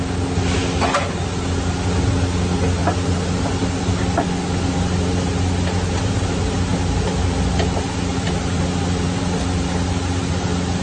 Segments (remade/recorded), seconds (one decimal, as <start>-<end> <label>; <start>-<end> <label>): 0.0-10.8 recorded

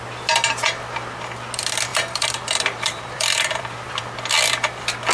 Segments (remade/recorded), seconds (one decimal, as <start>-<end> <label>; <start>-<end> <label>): 0.0-1.9 recorded; 1.9-4.0 remade; 4.0-5.1 recorded

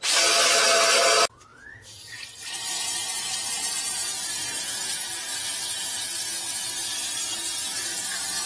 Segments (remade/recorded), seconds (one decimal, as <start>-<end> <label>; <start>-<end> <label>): 0.0-8.5 recorded